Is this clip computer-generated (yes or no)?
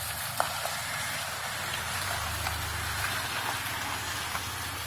no